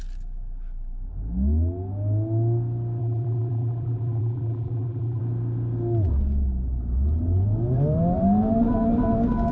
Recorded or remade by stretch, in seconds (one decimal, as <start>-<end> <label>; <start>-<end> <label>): 0.0-3.0 recorded; 3.0-5.2 remade; 5.2-9.5 recorded